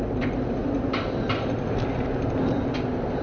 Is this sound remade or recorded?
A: recorded